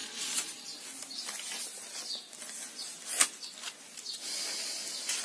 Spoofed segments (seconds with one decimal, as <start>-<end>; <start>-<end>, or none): none